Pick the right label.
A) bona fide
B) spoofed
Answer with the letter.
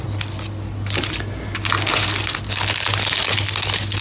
A